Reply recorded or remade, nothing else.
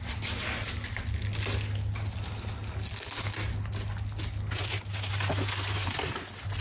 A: recorded